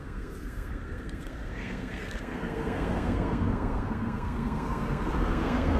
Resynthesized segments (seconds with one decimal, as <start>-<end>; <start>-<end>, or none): 0.0-5.8